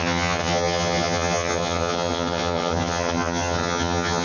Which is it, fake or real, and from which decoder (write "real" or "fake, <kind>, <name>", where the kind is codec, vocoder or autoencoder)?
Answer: fake, vocoder, HiFi-GAN